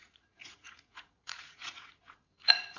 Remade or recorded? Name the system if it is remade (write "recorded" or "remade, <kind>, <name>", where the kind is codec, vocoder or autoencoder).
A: remade, vocoder, Vocos